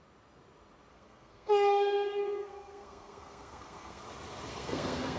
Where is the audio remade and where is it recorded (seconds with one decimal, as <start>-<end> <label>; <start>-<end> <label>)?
0.0-0.9 recorded; 0.9-4.0 remade; 4.0-4.5 recorded; 4.5-5.2 remade